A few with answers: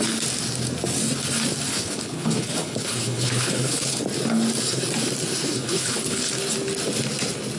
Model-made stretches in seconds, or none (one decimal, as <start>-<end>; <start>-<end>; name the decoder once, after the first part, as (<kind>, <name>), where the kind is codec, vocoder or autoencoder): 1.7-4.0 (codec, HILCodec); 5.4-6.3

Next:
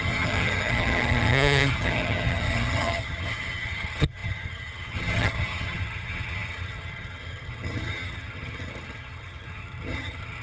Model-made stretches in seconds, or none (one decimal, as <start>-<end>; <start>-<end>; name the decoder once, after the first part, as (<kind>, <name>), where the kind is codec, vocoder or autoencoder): 0.0-10.4 (vocoder, HiFi-GAN)

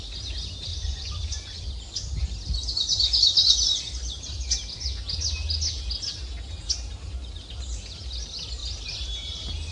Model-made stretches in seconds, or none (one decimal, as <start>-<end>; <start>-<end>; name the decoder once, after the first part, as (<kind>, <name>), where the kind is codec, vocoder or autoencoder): 0.7-1.7 (vocoder, Vocos)

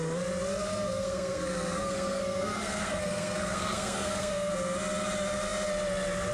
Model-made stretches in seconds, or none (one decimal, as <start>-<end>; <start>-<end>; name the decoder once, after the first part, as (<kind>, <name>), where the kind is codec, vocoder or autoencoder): 0.7-4.5 (codec, SNAC)

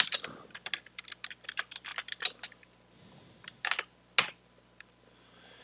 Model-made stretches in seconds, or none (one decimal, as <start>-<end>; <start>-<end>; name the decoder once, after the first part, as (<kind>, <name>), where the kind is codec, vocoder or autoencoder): none